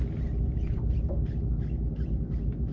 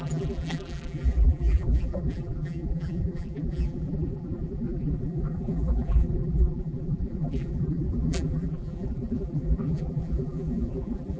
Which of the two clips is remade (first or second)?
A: second